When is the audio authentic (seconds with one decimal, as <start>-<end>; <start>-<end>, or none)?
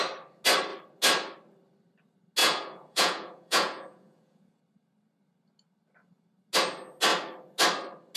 0.0-2.4; 4.6-8.2